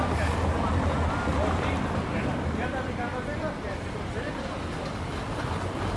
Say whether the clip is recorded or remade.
recorded